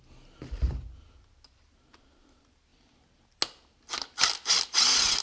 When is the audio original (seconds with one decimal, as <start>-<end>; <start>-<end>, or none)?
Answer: 0.0-5.2